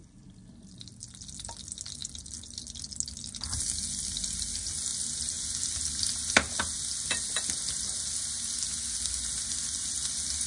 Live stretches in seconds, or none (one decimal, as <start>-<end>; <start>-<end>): 0.0-10.5